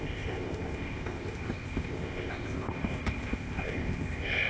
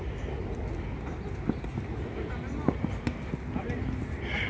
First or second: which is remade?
first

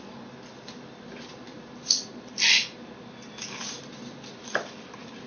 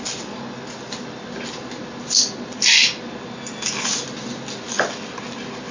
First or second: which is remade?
first